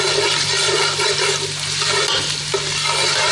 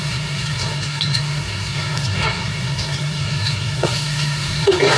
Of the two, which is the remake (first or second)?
second